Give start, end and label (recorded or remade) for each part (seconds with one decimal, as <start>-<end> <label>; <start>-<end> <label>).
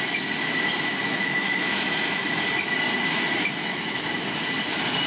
0.0-1.0 recorded; 1.0-2.5 remade; 2.5-3.6 recorded; 3.6-4.2 remade; 4.2-5.1 recorded